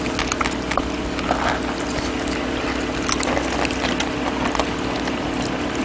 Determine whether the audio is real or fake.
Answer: real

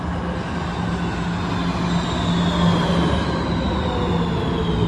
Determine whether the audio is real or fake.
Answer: real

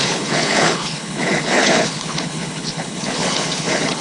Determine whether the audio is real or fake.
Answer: fake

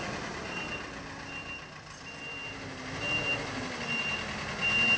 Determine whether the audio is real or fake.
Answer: real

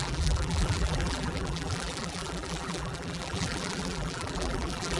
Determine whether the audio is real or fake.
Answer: fake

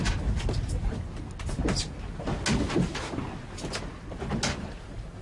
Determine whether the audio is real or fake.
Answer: real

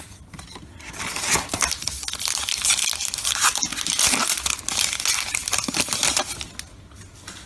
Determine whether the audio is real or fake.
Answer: real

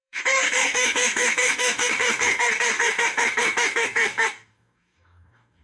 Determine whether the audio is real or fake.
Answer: fake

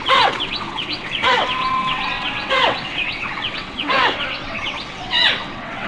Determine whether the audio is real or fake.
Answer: fake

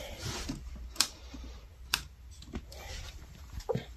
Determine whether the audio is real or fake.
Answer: fake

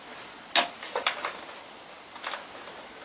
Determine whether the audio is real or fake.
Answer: real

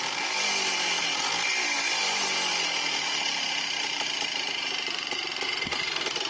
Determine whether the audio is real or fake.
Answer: real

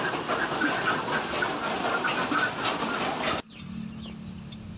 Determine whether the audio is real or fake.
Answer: real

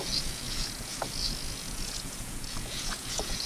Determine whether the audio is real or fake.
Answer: fake